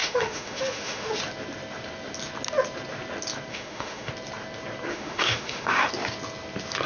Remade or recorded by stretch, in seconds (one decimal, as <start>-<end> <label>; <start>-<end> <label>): 0.0-1.1 remade; 1.1-3.5 recorded; 3.5-4.1 remade; 4.1-4.9 recorded; 4.9-5.9 remade; 5.9-6.9 recorded